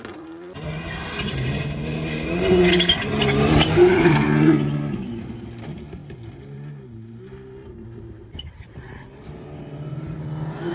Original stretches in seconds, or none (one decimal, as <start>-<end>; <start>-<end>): 0.0-10.7